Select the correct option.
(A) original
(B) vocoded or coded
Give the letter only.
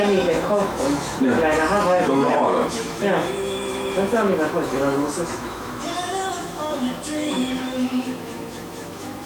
B